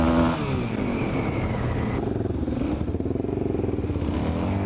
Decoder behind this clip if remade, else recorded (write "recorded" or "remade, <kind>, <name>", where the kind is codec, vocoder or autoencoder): recorded